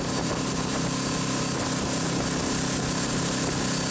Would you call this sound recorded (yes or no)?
yes